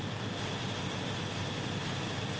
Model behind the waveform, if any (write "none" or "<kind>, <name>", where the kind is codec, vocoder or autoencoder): none